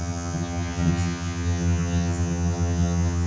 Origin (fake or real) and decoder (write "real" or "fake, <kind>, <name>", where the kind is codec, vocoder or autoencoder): fake, vocoder, HiFi-GAN